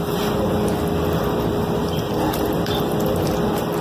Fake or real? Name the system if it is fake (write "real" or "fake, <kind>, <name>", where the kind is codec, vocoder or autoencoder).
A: fake, vocoder, BigVGAN v2